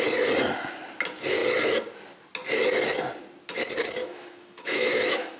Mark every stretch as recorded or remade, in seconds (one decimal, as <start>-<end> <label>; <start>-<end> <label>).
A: 0.0-4.0 recorded; 4.0-5.4 remade